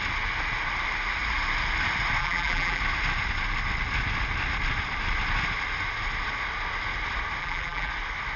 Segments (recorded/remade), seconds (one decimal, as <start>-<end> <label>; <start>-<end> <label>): 0.0-2.2 recorded; 2.2-2.8 remade; 2.8-7.4 recorded; 7.4-7.9 remade; 7.9-8.4 recorded